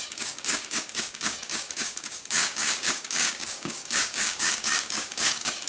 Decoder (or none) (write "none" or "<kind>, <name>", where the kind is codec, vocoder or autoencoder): codec, DAC